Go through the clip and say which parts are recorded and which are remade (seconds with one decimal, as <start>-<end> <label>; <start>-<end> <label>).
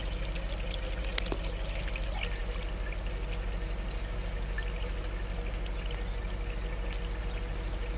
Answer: 0.0-8.0 recorded